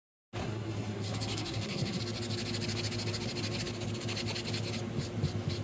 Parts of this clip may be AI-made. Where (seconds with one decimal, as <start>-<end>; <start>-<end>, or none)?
0.4-2.0